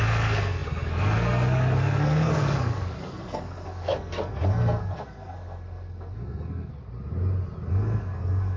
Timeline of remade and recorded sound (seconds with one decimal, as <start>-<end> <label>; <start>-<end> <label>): 0.0-6.7 remade; 6.7-7.7 recorded; 7.7-8.6 remade